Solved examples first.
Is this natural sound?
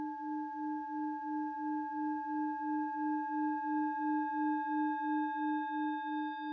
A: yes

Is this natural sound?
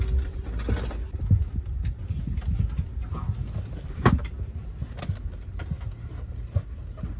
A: yes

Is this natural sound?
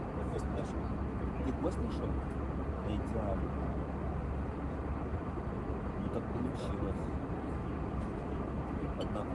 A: yes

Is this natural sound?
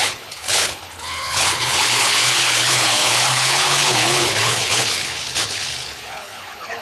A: no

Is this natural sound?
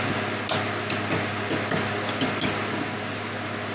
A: yes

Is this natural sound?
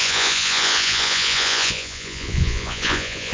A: no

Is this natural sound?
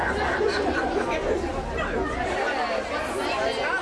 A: yes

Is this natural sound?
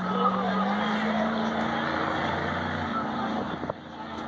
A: yes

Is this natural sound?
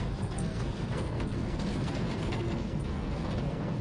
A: no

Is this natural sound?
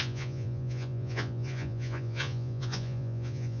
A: no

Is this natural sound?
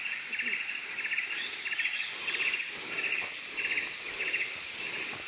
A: yes